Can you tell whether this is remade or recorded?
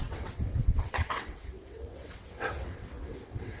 remade